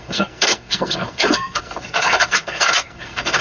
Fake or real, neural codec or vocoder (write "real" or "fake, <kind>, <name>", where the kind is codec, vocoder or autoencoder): fake, codec, SNAC